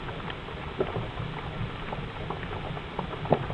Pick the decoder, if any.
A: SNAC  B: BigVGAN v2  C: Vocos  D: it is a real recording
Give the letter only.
D